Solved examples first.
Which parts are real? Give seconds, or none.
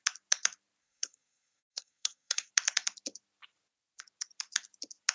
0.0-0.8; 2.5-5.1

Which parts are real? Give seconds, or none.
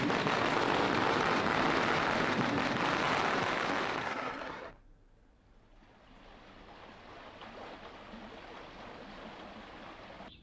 0.0-4.0; 4.7-10.4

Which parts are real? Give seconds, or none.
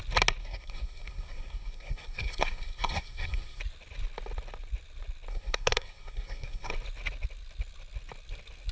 0.0-0.4; 3.6-5.3; 6.7-8.7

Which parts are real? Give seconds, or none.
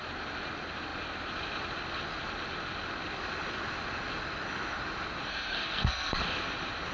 0.0-5.3; 6.2-6.9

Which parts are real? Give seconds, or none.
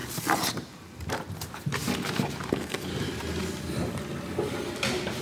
0.0-2.5; 2.9-5.2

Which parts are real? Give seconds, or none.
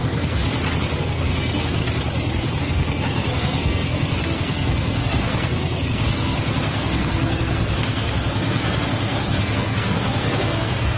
0.4-1.0; 1.8-2.6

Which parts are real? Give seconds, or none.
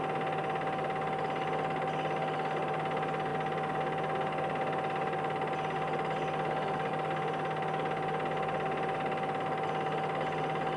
0.0-10.8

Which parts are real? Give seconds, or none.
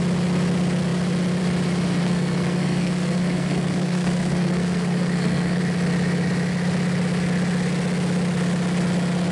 0.0-2.0; 5.6-9.3